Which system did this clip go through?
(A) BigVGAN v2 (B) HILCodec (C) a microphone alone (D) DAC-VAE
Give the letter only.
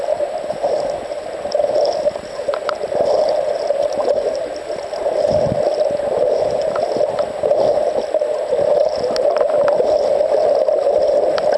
C